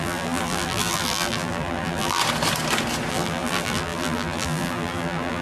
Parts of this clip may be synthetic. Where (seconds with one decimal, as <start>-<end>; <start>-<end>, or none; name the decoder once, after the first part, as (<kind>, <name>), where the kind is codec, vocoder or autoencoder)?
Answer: 0.0-2.2 (vocoder, BigVGAN v2); 3.1-5.4